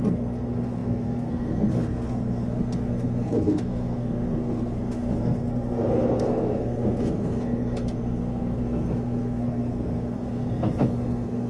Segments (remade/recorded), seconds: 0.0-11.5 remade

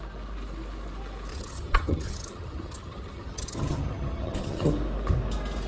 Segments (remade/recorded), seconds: 0.0-1.3 recorded; 1.3-4.7 remade; 4.7-5.7 recorded

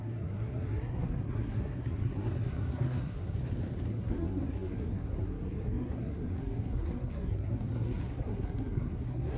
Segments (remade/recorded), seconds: 0.0-3.4 remade; 3.4-3.9 recorded; 3.9-9.4 remade

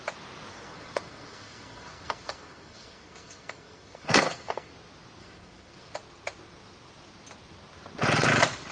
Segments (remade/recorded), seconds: 0.0-0.5 recorded; 0.5-4.7 remade; 4.7-5.2 recorded; 5.2-5.9 remade; 5.9-8.7 recorded

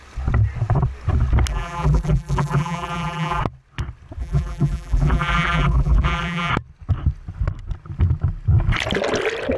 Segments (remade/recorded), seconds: 0.0-1.5 recorded; 1.5-3.4 remade; 3.4-4.2 recorded; 4.2-6.5 remade; 6.5-9.6 recorded

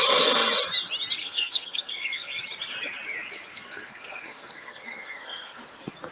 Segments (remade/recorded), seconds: 0.0-1.2 recorded; 1.2-2.4 remade; 2.4-3.5 recorded; 3.5-5.6 remade; 5.6-6.1 recorded

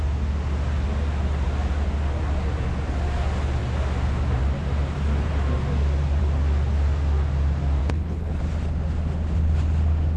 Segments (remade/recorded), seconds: 0.0-7.8 recorded; 7.8-8.4 remade; 8.4-10.2 recorded

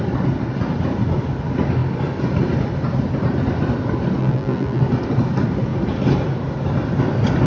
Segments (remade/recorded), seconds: 0.0-4.2 recorded; 4.2-4.8 remade; 4.8-7.5 recorded